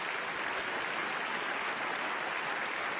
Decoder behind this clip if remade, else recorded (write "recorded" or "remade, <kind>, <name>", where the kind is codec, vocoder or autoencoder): recorded